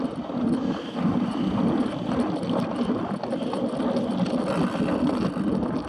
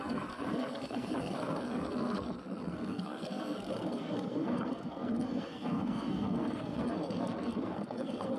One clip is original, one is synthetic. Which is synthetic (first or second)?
second